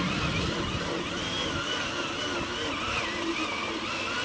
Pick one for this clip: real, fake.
real